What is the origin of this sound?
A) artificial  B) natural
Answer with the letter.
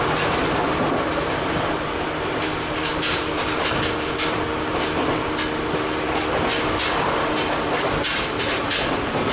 B